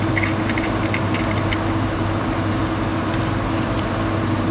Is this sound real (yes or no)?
yes